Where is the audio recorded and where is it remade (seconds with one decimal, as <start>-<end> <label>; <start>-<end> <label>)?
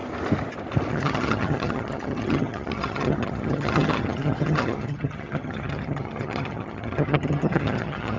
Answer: 0.0-0.9 recorded; 0.9-8.2 remade